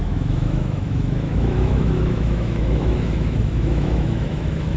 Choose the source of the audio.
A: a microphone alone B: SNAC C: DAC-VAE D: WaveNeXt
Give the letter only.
C